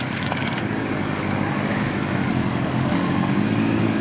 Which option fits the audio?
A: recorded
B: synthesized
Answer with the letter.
B